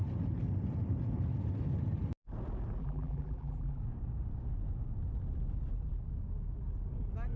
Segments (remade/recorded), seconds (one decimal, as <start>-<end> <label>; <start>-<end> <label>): 0.0-2.8 recorded; 2.8-3.8 remade; 3.8-7.4 recorded